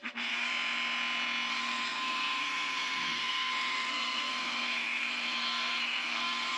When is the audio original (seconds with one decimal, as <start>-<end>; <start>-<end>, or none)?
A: 0.5-1.5